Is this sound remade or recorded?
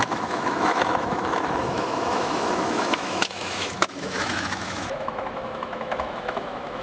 remade